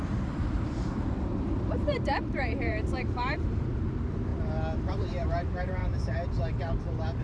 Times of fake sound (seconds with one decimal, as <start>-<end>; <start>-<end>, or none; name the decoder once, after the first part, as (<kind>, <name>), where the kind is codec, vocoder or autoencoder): 0.0-4.3 (vocoder, BigVGAN v2); 4.9-5.8